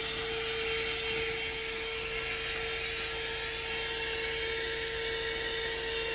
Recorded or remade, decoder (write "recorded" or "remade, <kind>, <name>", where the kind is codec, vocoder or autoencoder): recorded